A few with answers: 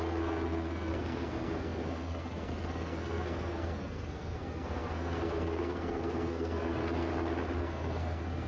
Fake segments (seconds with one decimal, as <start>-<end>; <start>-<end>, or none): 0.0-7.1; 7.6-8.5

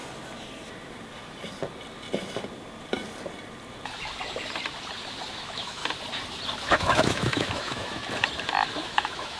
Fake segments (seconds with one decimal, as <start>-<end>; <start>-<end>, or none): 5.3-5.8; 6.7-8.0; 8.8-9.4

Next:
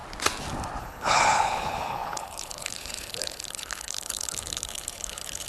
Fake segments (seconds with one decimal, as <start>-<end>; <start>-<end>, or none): 0.8-5.5

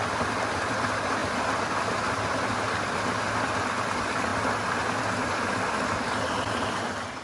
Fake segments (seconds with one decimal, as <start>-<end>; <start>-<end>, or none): none

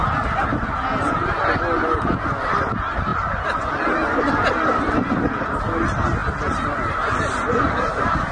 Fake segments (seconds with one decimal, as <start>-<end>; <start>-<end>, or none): 0.0-0.6

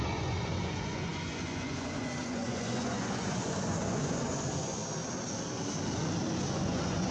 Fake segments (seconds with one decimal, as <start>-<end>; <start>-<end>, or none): 0.0-4.8; 6.5-7.1